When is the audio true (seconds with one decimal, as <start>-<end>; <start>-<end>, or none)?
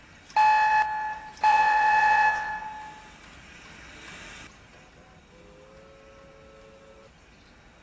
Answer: 0.0-1.5; 2.5-7.8